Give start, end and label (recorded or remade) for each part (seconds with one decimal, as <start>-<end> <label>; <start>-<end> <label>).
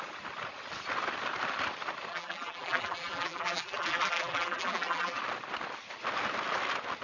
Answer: 0.0-2.1 recorded; 2.1-5.2 remade; 5.2-7.0 recorded